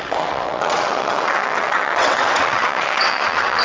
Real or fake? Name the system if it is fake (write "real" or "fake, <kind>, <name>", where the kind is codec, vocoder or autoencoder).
fake, vocoder, WaveNeXt